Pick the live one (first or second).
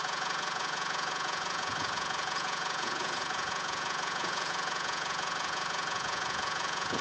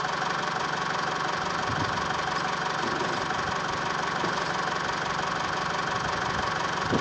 second